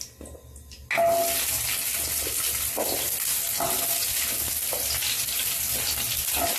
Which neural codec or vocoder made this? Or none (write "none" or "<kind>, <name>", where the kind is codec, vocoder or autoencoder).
none